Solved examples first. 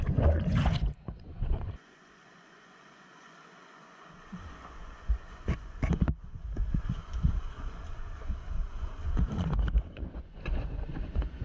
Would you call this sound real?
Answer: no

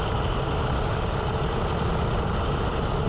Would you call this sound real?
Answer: yes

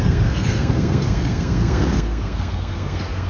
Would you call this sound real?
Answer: no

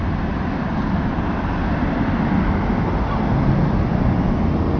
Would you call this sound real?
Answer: yes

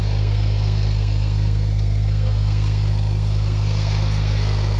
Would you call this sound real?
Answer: no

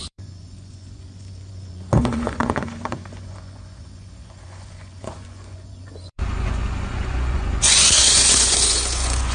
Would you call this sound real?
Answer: no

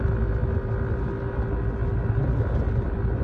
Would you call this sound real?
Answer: yes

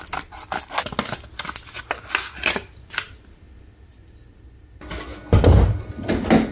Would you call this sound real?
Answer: yes